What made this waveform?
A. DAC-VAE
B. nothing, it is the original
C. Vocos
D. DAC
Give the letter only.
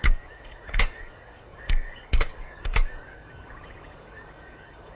D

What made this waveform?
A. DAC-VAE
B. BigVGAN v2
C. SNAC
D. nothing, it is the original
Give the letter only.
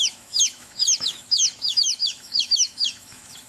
A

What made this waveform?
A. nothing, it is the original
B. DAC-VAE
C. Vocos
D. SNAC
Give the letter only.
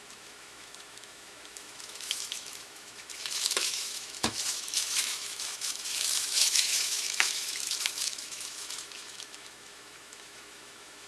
B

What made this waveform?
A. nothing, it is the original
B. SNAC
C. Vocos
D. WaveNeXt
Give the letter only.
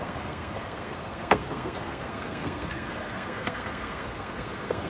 B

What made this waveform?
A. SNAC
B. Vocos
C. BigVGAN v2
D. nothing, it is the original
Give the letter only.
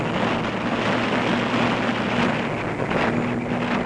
D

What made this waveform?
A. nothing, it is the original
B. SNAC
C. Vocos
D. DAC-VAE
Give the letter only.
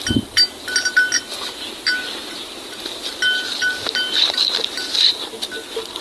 A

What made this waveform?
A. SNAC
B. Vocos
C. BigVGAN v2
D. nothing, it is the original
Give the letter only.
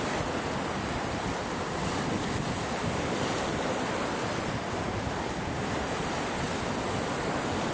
D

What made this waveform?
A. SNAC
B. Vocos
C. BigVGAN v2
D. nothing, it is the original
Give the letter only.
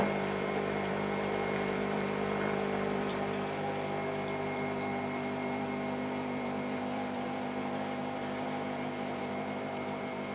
C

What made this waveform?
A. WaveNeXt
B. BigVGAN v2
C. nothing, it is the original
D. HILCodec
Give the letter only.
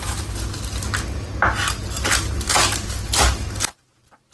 C